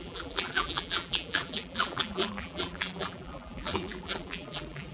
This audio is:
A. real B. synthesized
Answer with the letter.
B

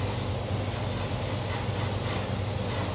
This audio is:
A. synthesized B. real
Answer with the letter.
B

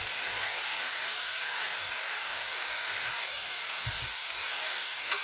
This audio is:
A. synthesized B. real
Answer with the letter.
A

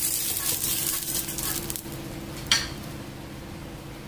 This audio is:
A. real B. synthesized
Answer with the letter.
B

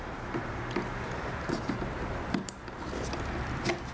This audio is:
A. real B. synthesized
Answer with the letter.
A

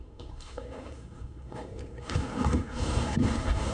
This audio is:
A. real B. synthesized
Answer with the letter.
B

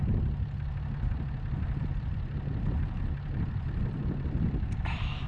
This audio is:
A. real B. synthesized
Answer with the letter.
A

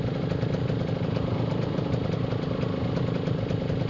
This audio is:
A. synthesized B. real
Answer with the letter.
B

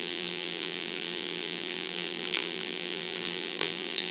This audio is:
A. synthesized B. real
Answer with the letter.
A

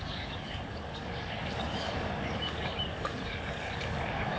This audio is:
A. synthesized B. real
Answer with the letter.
A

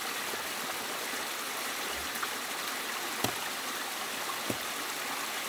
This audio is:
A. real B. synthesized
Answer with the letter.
A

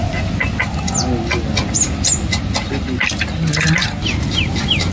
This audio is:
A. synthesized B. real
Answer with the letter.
B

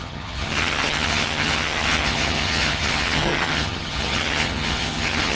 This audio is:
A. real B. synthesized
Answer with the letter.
B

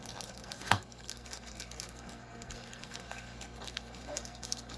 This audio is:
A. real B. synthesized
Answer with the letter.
B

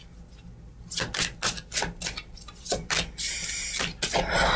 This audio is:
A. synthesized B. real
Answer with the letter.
B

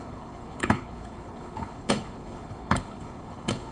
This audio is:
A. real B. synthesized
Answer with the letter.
B